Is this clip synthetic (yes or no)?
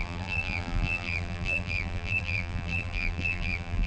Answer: yes